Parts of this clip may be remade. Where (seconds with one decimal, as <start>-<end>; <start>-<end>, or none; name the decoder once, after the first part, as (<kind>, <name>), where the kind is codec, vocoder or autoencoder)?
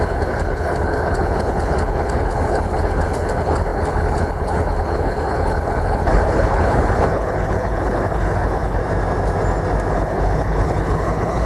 0.0-8.8 (codec, HILCodec); 9.9-11.5